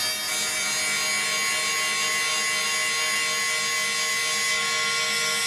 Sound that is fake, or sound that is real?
real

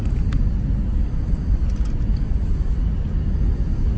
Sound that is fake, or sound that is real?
real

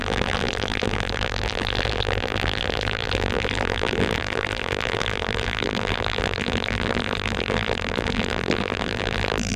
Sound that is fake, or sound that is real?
fake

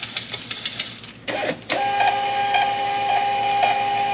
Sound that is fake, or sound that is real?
real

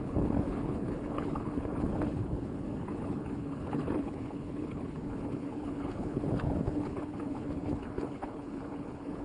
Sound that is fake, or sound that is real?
fake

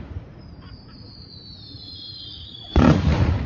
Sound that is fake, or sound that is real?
fake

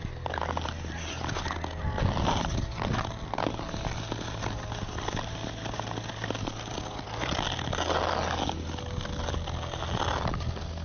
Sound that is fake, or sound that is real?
real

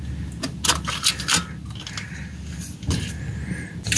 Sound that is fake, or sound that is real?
real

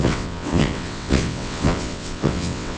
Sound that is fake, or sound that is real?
fake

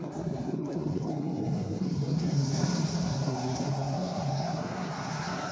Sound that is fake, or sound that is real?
fake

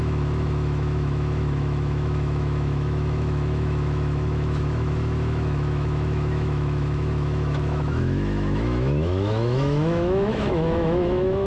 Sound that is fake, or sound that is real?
fake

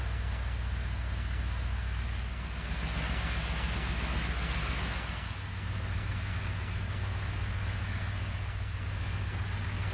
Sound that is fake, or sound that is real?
fake